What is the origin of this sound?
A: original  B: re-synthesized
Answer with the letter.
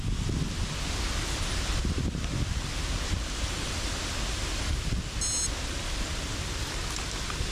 A